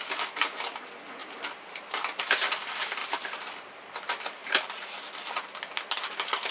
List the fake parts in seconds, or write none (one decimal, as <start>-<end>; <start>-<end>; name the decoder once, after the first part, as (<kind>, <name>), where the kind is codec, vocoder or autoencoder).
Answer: 1.2-1.8 (vocoder, BigVGAN v2); 3.0-3.8; 4.4-5.1